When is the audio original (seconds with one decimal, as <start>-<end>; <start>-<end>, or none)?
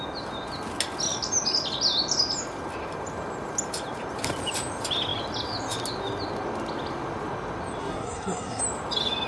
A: 0.0-7.8; 8.6-9.3